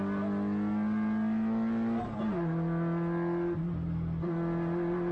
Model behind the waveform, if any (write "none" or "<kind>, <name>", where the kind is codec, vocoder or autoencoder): none